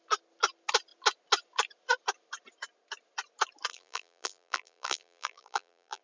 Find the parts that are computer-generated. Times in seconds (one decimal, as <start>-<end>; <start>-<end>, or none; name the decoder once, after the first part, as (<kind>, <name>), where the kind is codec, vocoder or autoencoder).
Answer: 3.7-6.0 (vocoder, BigVGAN v2)